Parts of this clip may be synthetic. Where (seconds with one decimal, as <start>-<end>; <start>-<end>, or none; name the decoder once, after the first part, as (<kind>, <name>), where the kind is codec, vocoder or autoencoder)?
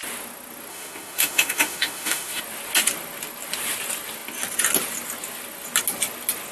0.7-2.4 (autoencoder, DAC-VAE)